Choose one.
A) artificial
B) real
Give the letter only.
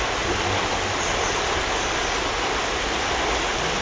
B